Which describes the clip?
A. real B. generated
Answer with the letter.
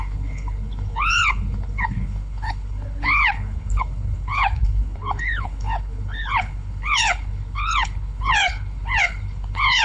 B